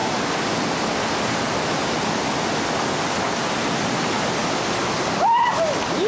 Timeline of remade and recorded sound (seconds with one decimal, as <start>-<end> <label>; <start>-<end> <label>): 0.0-6.1 recorded